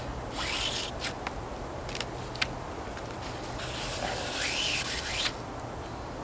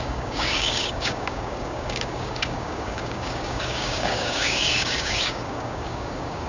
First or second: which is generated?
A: second